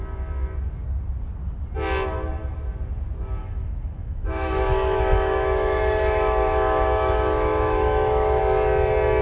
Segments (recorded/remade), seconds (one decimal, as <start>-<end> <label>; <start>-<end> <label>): 0.0-3.4 recorded; 3.4-8.4 remade; 8.4-9.2 recorded